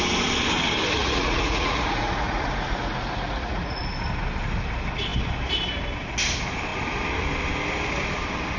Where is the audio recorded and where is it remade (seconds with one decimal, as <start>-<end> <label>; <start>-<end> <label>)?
0.0-1.0 recorded; 1.0-3.8 remade; 3.8-8.6 recorded